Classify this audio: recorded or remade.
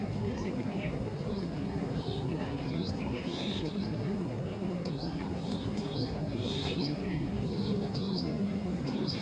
remade